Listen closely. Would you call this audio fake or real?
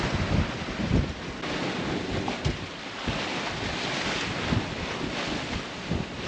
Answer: real